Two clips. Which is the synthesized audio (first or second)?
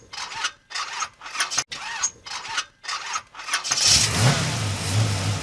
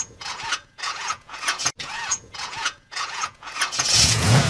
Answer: second